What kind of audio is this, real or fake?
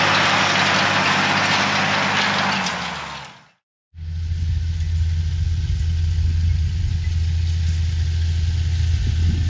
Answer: real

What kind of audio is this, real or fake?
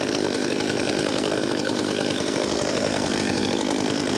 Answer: fake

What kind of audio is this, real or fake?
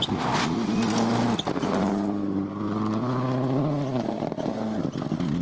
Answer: real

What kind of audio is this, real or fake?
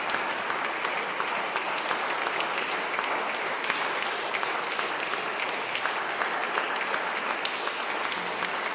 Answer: real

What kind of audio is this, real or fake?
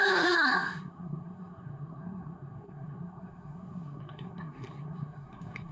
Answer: fake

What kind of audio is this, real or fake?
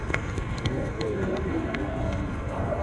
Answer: fake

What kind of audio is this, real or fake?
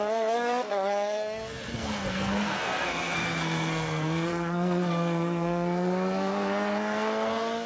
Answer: fake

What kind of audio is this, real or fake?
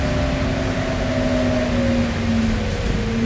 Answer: real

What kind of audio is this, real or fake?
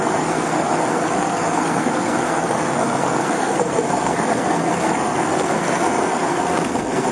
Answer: fake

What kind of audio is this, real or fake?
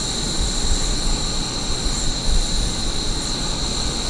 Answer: real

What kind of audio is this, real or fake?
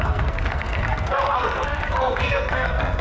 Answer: fake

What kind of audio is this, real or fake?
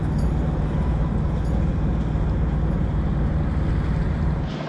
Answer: real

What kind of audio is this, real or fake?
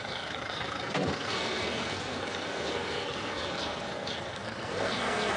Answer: fake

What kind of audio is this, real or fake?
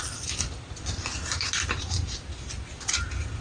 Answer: real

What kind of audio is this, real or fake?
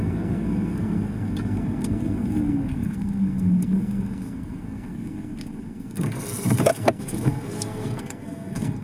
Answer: fake